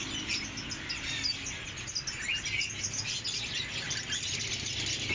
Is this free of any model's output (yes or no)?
yes